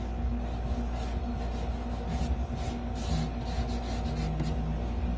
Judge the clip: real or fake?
real